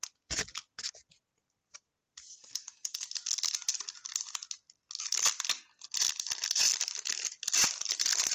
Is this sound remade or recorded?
recorded